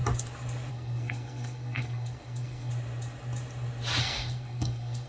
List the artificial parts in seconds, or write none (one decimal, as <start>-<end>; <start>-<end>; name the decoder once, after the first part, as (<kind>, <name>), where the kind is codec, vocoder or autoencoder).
0.7-2.7 (codec, SNAC); 4.0-5.1